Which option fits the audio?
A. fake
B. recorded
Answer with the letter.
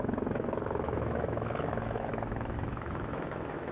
A